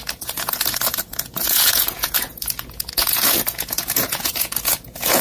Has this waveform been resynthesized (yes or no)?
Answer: yes